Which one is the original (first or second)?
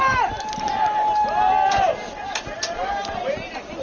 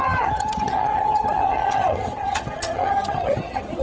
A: first